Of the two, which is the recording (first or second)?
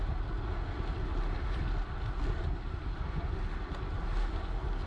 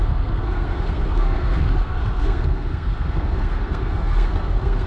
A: first